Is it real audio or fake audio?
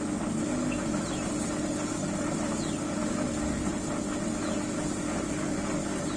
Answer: real